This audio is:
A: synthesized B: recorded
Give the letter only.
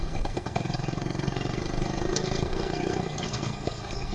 A